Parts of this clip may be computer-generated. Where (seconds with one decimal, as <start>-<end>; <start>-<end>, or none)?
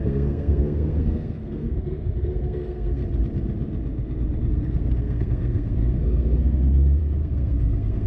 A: 0.0-3.0; 4.5-8.1